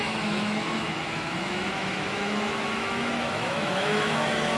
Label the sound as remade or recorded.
remade